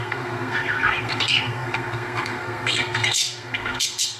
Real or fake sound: fake